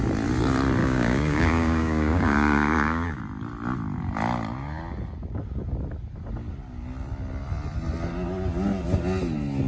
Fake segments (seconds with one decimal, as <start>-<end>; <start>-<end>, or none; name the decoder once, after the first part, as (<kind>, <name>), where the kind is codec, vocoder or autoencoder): 0.8-3.2 (codec, DAC)

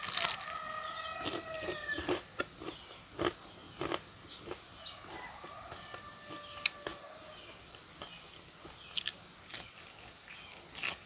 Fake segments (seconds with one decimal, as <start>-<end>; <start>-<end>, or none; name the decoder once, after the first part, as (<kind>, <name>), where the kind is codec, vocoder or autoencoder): none

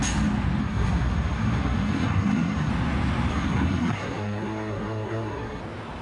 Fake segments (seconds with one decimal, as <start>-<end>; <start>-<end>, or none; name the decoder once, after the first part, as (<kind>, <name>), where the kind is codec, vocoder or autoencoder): 0.6-2.7 (codec, SNAC); 3.3-5.6

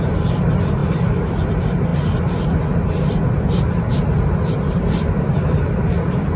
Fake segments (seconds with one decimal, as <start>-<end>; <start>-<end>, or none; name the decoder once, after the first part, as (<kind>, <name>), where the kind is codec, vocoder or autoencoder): none

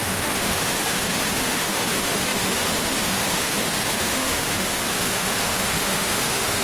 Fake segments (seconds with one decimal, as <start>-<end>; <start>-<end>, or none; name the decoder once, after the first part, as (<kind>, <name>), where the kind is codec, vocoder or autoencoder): 0.0-6.6 (autoencoder, DAC-VAE)

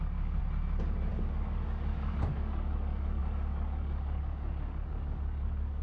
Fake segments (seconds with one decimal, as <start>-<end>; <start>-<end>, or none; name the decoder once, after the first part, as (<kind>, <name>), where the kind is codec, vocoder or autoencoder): 0.0-0.4 (codec, DAC); 1.1-5.8